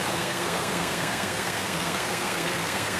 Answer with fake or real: fake